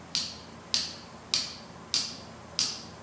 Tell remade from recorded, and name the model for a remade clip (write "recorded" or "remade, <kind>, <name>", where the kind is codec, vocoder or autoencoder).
recorded